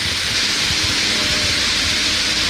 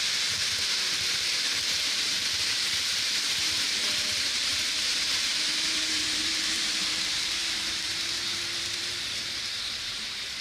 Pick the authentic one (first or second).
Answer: first